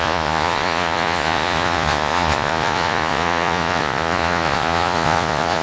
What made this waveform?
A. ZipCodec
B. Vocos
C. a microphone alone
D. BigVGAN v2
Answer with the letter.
B